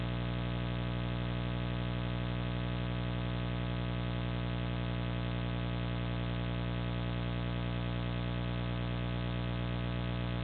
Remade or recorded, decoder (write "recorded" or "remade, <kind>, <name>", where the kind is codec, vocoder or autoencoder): recorded